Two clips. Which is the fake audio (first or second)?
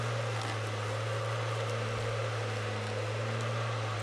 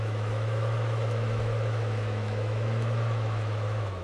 second